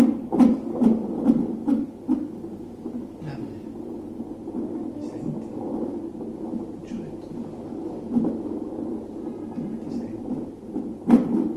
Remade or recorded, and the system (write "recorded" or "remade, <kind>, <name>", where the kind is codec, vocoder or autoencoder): recorded